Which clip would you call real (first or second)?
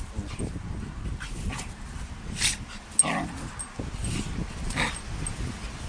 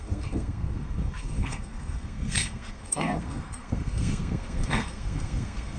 first